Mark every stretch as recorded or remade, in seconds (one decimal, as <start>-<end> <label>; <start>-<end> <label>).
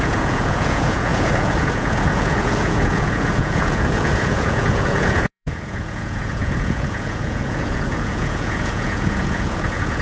0.0-10.0 remade